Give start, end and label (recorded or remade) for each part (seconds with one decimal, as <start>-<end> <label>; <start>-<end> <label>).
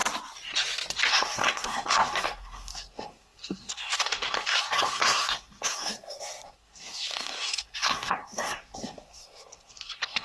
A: 0.0-1.1 recorded; 1.1-10.2 remade